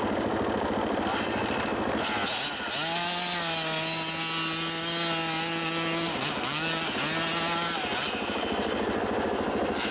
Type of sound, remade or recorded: recorded